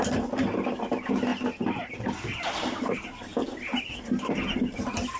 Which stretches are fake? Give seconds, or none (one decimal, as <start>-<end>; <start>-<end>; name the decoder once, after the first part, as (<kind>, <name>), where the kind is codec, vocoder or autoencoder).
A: none